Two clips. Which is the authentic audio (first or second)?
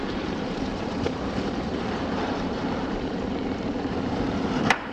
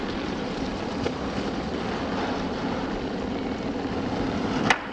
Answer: second